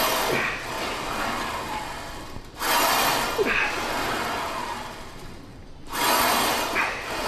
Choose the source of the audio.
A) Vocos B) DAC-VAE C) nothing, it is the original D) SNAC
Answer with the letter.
C